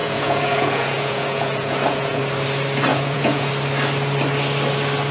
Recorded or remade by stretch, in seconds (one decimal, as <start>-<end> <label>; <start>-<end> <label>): 0.0-2.2 remade; 2.2-2.9 recorded; 2.9-3.5 remade; 3.5-5.1 recorded